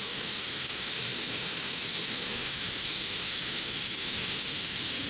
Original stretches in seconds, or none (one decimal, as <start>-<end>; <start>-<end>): none